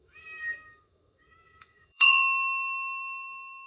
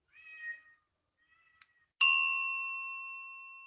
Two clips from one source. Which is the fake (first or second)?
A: first